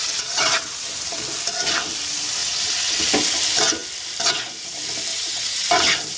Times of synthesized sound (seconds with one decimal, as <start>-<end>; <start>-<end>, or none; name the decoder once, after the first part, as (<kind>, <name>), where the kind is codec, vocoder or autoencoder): 0.0-0.8 (vocoder, WaveNeXt); 2.4-3.0; 5.1-5.7